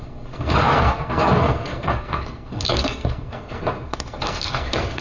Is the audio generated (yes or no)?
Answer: yes